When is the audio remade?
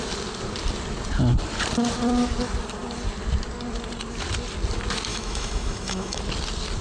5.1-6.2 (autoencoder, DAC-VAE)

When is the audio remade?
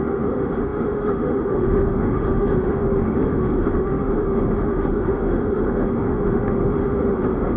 0.0-7.6 (autoencoder, DAC-VAE)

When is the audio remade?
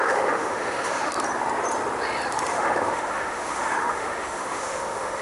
0.0-1.1 (autoencoder, DAC-VAE); 2.5-5.2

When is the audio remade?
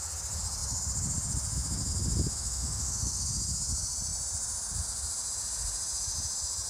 2.3-3.2 (autoencoder, DAC-VAE)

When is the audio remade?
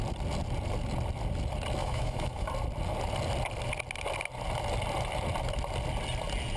1.8-2.5 (autoencoder, DAC-VAE)